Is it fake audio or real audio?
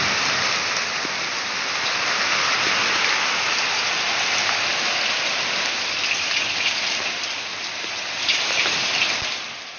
real